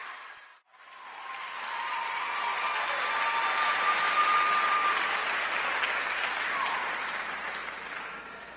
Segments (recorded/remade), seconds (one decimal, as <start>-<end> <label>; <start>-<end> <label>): 0.0-0.5 remade; 0.5-3.6 recorded; 3.6-5.2 remade; 5.2-6.1 recorded; 6.1-8.6 remade